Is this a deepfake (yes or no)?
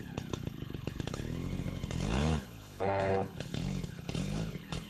yes